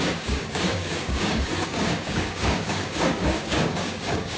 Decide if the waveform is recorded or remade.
remade